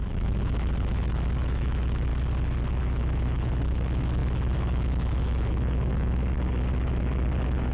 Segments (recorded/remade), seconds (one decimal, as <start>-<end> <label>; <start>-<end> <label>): 0.0-2.1 remade; 2.1-2.7 recorded; 2.7-7.7 remade